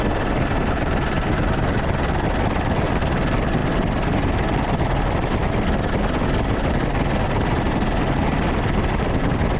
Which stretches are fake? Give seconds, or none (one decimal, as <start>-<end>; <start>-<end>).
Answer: none